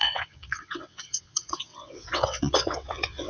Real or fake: fake